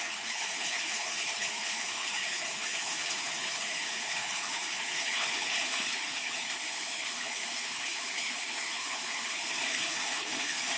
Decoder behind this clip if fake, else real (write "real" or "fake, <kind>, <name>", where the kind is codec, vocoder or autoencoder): fake, codec, HILCodec